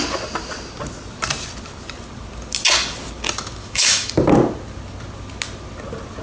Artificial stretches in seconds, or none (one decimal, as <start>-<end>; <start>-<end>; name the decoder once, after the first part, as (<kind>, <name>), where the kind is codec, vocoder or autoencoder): 3.6-4.1 (autoencoder, DAC-VAE)